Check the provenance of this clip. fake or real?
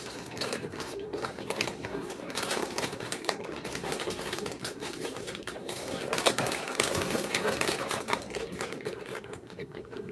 fake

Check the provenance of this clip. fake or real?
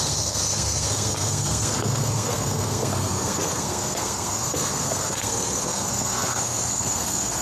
fake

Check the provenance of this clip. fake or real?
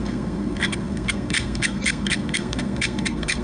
fake